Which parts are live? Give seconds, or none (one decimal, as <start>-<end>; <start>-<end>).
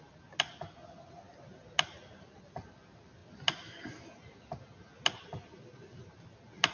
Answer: 0.0-6.7